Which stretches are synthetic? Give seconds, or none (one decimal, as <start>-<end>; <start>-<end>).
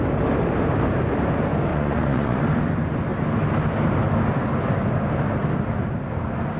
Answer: 1.7-2.4